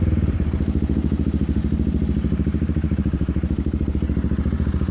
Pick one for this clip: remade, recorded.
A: recorded